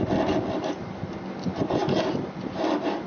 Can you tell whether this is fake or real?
real